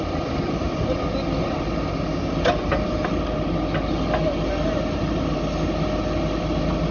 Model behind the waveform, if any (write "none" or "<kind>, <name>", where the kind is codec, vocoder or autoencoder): none